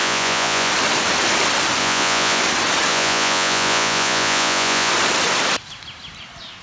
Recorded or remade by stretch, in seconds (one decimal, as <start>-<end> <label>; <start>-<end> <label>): 0.0-0.7 remade; 0.7-1.8 recorded; 1.8-2.4 remade; 2.4-2.9 recorded; 2.9-4.9 remade; 4.9-6.6 recorded